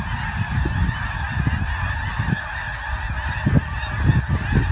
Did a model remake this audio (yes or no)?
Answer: no